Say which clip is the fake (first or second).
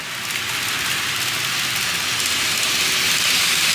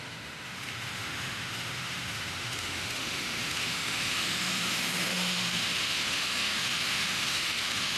second